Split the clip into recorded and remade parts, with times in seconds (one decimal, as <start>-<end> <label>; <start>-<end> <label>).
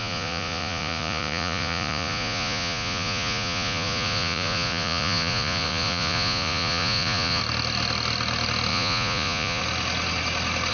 0.0-7.4 remade; 7.4-8.7 recorded; 8.7-9.6 remade; 9.6-10.7 recorded